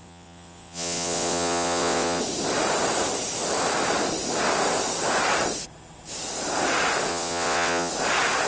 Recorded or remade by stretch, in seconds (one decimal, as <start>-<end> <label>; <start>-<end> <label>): 0.0-2.2 remade; 2.2-7.1 recorded; 7.1-7.9 remade; 7.9-8.5 recorded